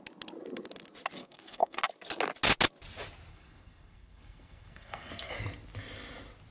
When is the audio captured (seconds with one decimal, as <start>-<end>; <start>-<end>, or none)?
0.0-1.2; 1.8-3.3; 5.3-6.5